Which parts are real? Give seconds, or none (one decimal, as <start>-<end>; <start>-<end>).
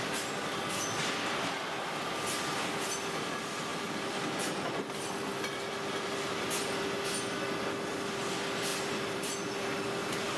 0.0-3.7; 4.5-8.7; 9.3-10.4